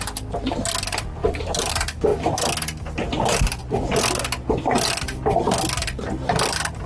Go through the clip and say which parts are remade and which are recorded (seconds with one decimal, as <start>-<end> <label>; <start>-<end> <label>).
0.0-1.2 recorded; 1.2-1.7 remade; 1.7-6.9 recorded